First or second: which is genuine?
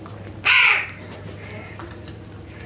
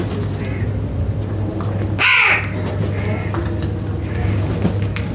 second